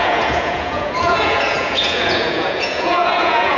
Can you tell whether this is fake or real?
fake